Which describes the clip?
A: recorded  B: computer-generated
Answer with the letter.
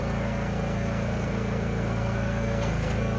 B